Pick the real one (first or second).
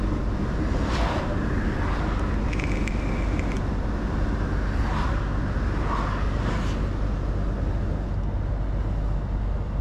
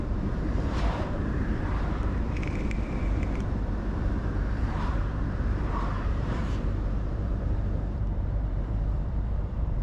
first